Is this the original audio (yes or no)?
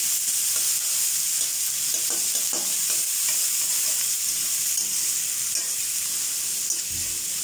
yes